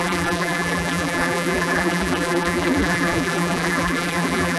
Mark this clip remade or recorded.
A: remade